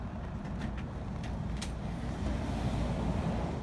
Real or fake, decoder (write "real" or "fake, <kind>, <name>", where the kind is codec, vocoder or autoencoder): real